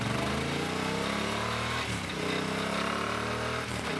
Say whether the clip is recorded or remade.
recorded